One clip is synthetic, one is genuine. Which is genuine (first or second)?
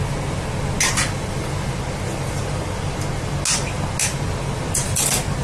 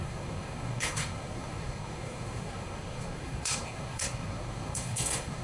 first